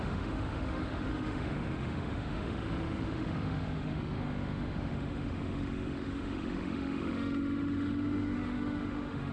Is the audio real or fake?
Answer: fake